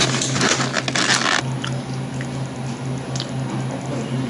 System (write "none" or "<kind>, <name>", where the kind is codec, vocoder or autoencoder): none